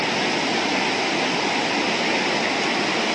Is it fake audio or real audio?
real